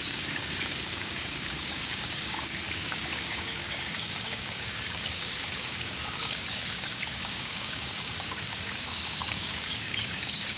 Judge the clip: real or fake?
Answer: fake